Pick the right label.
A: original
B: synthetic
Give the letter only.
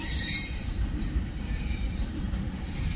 B